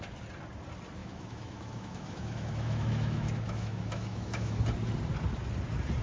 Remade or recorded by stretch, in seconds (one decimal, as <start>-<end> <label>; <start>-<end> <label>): 0.0-1.0 recorded; 1.0-4.6 remade; 4.6-6.0 recorded